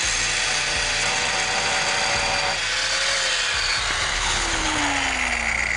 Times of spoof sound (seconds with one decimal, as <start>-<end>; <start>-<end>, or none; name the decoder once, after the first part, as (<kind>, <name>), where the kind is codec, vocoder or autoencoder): 4.1-4.8 (codec, HILCodec)